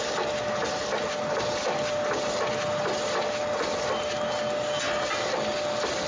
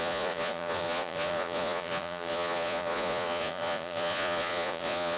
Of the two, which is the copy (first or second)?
second